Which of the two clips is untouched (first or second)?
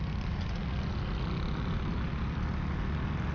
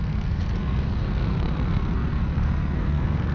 first